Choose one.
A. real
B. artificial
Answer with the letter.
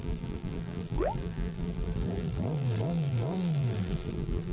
B